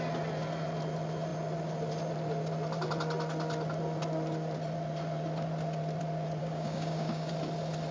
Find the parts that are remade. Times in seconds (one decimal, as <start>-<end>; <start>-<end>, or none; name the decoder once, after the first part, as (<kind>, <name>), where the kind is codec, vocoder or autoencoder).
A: 6.4-7.3 (codec, DAC)